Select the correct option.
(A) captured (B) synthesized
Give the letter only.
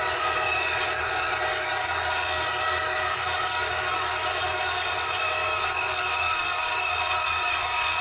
B